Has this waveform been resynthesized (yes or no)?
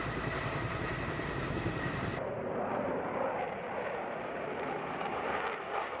yes